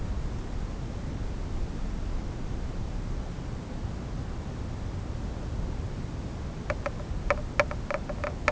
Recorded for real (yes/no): yes